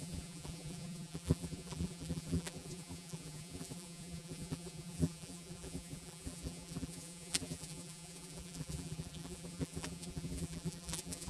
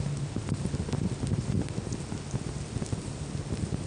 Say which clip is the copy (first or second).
first